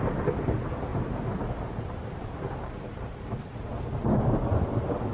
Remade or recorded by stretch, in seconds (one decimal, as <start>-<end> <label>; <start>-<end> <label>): 0.0-0.9 recorded; 0.9-3.8 remade; 3.8-5.1 recorded